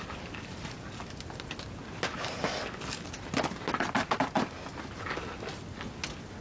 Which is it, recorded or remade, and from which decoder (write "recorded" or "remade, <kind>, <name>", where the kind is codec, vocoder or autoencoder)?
recorded